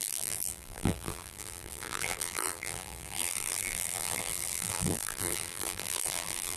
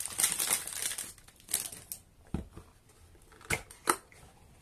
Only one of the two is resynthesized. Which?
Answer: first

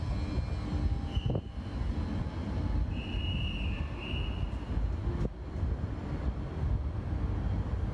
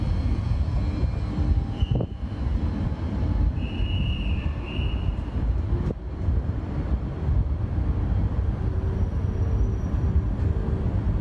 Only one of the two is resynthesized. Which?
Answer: second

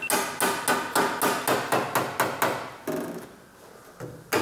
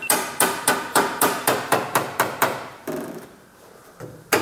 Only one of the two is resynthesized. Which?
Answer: second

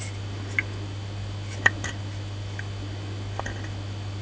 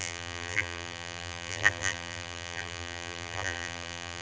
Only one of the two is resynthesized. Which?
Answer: second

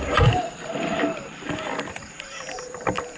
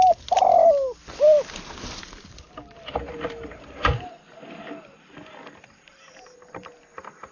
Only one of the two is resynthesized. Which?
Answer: first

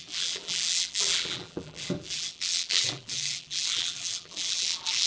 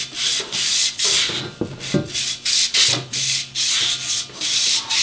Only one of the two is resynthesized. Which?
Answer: first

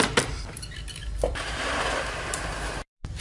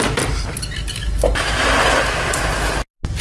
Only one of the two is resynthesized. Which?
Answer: first